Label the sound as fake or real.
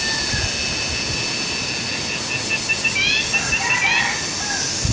real